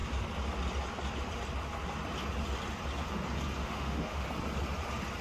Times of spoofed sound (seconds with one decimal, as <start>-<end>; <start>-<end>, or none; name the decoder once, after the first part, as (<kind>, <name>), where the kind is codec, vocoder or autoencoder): 3.6-4.2 (autoencoder, DAC-VAE)

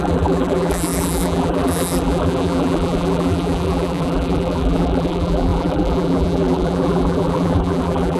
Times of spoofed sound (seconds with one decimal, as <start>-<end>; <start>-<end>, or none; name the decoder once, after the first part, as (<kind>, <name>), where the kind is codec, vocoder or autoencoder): 0.0-8.2 (vocoder, BigVGAN v2)

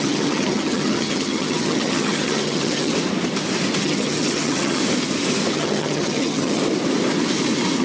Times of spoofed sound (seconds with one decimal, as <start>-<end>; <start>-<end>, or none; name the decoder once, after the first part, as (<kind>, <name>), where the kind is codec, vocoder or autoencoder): 0.0-2.9 (vocoder, HiFi-GAN); 3.8-4.8; 5.5-6.6

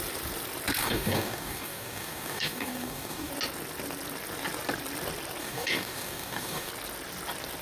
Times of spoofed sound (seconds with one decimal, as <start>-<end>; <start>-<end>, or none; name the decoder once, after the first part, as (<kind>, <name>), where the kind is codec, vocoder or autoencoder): 0.8-3.3 (codec, DAC); 5.4-6.7

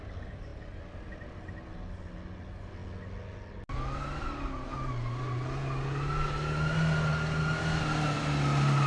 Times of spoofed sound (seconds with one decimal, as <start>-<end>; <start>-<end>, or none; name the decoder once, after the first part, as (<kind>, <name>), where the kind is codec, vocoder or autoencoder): none

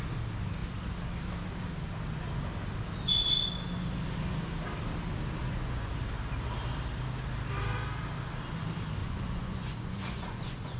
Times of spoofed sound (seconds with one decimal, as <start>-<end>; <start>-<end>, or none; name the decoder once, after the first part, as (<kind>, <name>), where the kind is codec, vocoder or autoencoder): 5.4-5.9 (vocoder, Vocos); 9.0-10.8